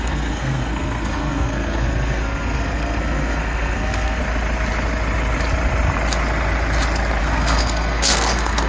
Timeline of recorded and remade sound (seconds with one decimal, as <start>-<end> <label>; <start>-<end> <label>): 0.0-4.2 remade; 4.2-7.2 recorded; 7.2-8.7 remade